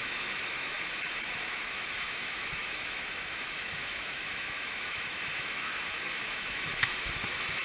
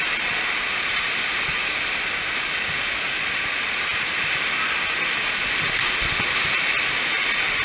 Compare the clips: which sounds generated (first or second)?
first